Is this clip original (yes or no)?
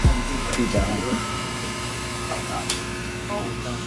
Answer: no